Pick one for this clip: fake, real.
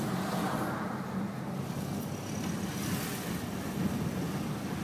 real